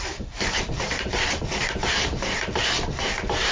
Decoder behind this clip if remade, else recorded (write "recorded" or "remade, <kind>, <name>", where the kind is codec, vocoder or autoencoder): remade, vocoder, BigVGAN v2